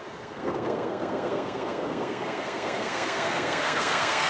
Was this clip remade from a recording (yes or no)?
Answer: yes